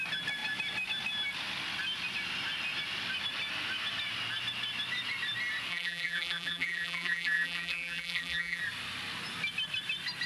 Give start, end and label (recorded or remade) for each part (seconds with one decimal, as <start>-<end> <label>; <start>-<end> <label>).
0.0-5.7 recorded; 5.7-8.6 remade; 8.6-10.3 recorded